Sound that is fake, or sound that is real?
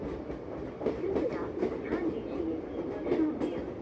real